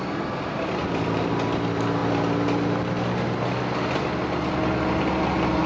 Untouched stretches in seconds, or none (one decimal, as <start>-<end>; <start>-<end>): 0.0-5.7

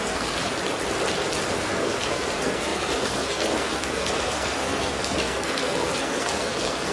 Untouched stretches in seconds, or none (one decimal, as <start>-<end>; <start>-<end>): 0.5-1.5

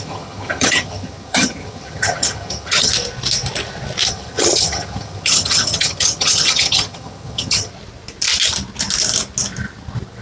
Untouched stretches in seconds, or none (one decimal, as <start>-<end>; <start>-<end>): 2.9-4.1; 7.7-10.2

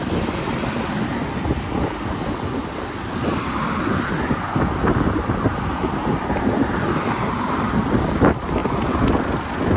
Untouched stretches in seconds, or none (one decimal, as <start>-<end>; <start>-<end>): 0.0-9.8

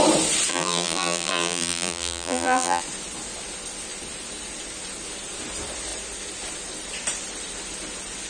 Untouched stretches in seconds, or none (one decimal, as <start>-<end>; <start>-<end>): 0.0-0.5; 2.8-8.3